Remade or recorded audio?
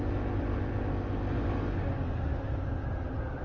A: recorded